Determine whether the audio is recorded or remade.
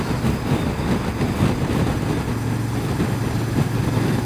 recorded